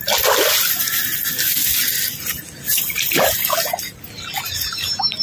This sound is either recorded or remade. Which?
recorded